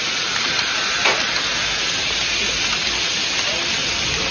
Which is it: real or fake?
real